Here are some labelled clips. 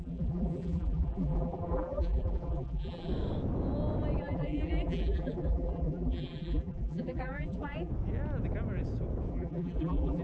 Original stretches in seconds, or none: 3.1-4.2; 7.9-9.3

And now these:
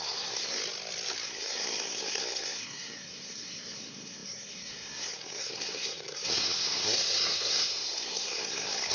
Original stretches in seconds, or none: 0.6-1.2

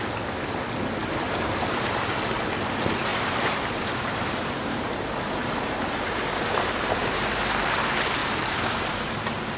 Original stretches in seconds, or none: 0.0-1.0; 1.9-3.1; 7.4-8.2

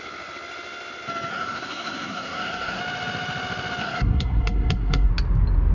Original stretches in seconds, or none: 0.0-1.3; 2.8-3.8; 5.1-5.7

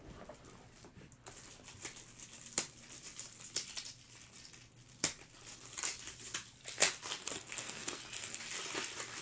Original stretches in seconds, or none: 0.0-7.2; 8.4-9.2

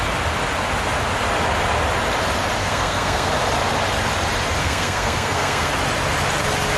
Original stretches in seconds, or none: 0.0-2.6; 3.3-4.6; 5.7-6.8

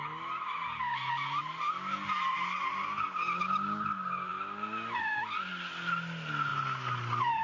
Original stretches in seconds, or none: 0.0-7.4

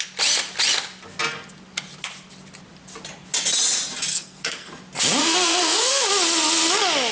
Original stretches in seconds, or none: 0.0-4.1; 4.7-5.2; 6.1-7.1